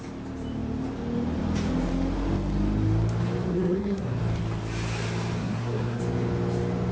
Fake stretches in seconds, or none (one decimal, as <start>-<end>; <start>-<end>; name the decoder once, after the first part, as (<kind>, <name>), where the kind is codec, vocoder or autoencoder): 3.5-4.2 (codec, SNAC); 5.4-6.0